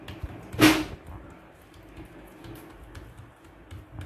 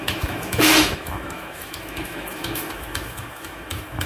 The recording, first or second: first